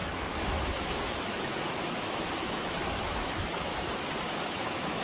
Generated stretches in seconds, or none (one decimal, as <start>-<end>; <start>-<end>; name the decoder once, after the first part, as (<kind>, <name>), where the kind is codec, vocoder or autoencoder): 0.0-3.7 (autoencoder, DAC-VAE); 4.2-5.0